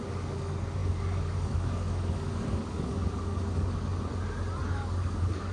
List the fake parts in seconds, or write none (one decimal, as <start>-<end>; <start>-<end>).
0.0-3.9; 4.7-5.5